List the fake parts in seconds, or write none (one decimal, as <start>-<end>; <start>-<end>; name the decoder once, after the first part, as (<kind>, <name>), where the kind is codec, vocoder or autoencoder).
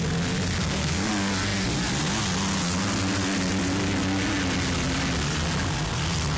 0.6-1.1 (codec, SNAC)